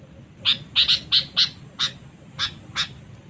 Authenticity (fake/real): real